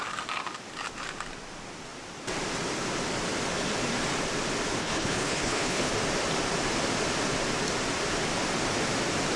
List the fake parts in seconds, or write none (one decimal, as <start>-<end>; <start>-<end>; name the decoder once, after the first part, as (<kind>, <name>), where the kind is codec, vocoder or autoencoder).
4.8-5.9 (codec, HILCodec)